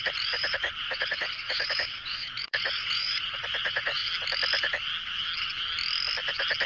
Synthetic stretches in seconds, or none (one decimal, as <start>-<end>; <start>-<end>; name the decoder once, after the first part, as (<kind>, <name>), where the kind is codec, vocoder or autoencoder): 0.0-4.0 (vocoder, Vocos)